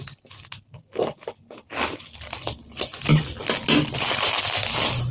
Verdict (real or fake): real